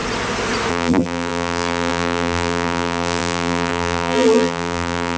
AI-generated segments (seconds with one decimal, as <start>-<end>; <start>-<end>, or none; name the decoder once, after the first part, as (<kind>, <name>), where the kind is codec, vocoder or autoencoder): 0.7-5.2 (vocoder, BigVGAN v2)